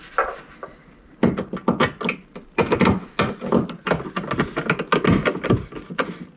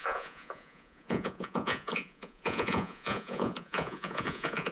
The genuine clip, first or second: first